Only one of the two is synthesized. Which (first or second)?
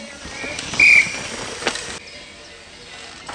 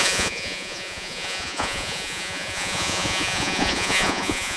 second